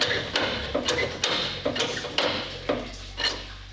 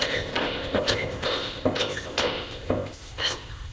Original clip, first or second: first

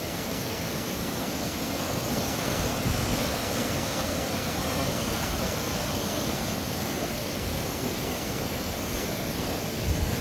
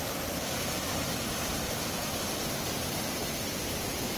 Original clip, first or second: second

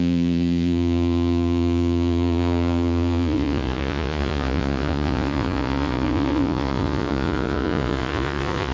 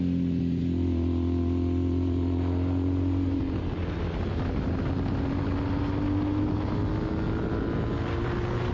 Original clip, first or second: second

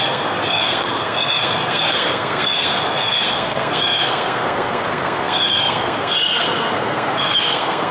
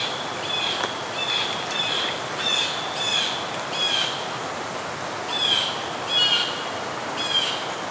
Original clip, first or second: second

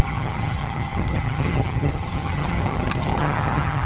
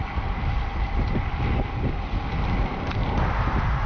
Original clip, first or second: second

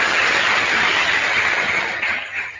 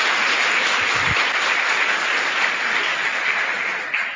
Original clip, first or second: second